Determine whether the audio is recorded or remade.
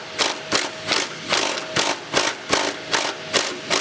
recorded